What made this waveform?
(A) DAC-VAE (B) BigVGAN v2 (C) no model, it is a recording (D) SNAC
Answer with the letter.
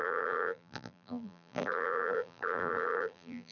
B